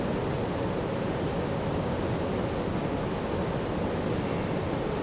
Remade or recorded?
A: recorded